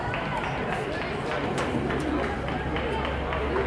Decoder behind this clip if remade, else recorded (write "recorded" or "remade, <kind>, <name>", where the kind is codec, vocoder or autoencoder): recorded